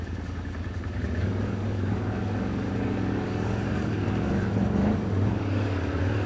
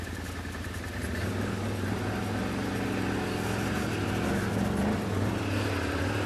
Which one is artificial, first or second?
first